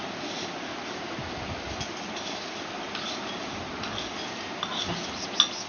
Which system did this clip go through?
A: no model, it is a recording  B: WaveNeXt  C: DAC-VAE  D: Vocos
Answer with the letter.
A